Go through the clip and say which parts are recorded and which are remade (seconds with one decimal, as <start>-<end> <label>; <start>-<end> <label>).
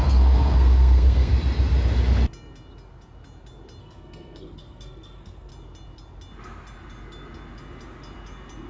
0.0-1.3 remade; 1.3-3.8 recorded; 3.8-5.5 remade; 5.5-8.7 recorded